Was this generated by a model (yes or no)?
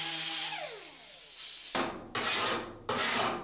no